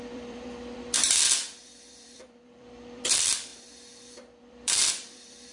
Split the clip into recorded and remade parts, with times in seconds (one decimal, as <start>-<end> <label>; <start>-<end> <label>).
0.0-3.5 remade; 3.5-4.1 recorded; 4.1-5.5 remade